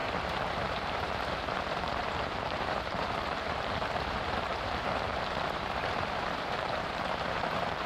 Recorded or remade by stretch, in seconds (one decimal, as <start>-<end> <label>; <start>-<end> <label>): 0.0-7.9 remade